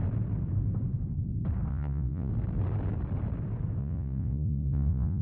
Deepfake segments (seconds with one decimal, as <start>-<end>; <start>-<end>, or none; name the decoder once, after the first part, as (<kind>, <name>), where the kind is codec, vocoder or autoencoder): 1.7-2.3 (vocoder, Vocos); 3.8-5.2